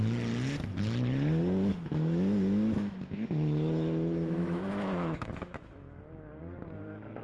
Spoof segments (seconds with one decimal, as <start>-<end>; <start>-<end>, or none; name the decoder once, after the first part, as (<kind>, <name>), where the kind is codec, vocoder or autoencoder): 1.7-6.0 (autoencoder, DAC-VAE)